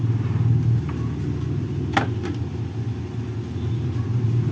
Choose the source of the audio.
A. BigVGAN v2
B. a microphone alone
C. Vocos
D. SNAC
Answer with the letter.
B